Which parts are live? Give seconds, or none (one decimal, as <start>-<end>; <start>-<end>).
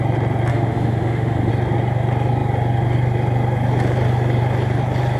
0.0-0.5; 1.5-5.2